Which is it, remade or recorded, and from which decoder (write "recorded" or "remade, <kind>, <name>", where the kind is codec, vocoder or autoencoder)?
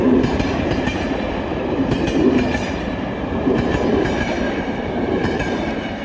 remade, vocoder, BigVGAN v2